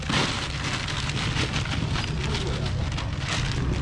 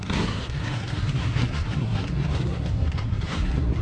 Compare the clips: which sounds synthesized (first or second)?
second